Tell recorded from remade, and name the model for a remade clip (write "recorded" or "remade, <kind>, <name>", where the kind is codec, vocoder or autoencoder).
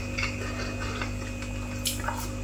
recorded